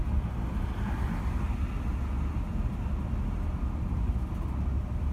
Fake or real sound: real